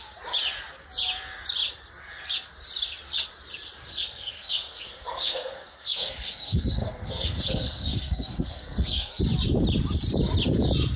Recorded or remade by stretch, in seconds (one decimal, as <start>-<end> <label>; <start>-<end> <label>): 0.0-3.9 recorded; 3.9-9.2 remade; 9.2-11.0 recorded